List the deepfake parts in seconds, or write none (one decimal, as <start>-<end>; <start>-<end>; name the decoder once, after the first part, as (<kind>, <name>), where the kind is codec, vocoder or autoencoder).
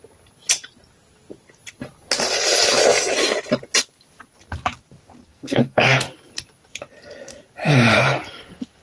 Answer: 5.3-6.0 (codec, SNAC)